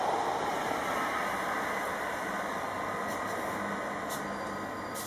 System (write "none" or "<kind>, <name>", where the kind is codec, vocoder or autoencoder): none